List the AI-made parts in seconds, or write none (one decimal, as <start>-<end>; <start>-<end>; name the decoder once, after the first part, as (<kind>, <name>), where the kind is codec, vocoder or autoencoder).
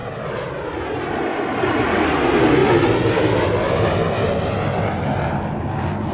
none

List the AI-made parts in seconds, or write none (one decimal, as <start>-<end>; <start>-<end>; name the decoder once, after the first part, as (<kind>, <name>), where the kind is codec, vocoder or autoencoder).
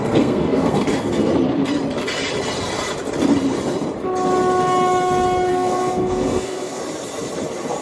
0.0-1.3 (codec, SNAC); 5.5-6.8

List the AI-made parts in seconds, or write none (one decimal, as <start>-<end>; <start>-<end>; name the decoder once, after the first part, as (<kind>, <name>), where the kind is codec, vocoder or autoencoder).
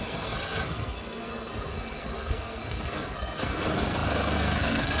0.0-5.0 (codec, SNAC)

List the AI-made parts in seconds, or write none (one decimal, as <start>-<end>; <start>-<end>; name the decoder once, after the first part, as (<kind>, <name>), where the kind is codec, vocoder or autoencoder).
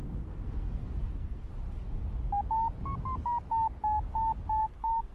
0.0-1.5 (codec, SNAC); 4.6-5.1